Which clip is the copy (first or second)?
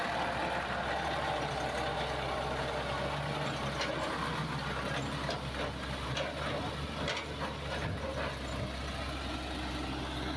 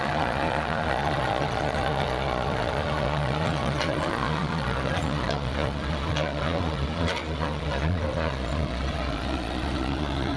second